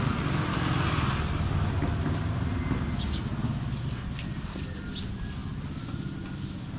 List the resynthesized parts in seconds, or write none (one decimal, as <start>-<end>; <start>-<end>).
none